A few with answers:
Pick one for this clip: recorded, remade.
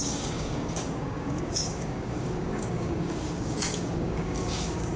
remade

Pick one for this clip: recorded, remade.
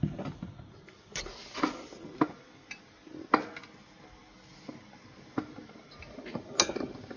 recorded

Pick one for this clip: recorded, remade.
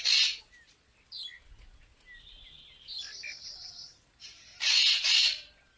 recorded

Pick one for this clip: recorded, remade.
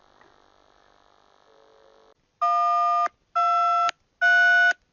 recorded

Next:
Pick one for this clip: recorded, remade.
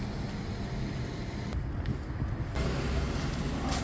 recorded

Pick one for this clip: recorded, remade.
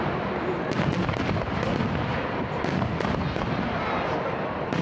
recorded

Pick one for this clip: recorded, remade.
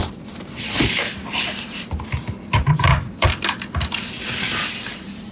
recorded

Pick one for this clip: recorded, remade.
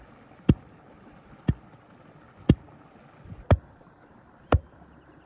recorded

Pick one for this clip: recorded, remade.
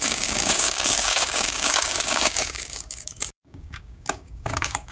remade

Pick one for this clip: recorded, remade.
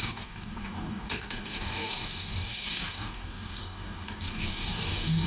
remade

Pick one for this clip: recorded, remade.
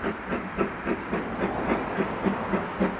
recorded